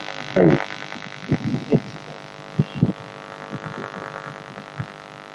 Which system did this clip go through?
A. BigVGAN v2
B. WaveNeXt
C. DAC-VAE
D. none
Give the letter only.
D